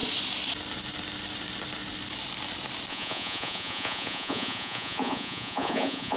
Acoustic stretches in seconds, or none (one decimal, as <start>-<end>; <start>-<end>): 0.0-2.9